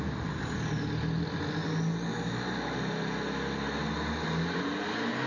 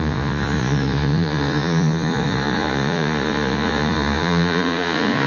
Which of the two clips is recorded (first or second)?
first